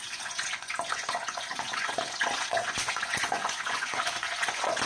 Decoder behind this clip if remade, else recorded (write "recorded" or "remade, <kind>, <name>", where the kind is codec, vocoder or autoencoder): remade, vocoder, Vocos